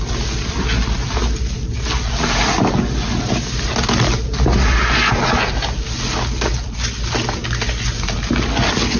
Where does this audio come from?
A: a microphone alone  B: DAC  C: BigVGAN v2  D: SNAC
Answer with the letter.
A